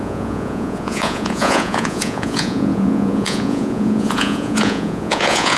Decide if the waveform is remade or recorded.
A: remade